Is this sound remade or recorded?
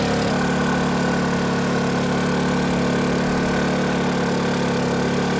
recorded